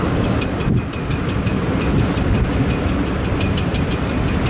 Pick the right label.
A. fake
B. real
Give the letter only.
B